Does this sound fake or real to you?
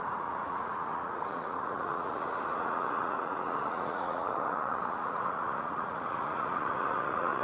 fake